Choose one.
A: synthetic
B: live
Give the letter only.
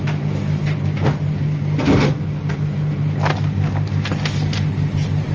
B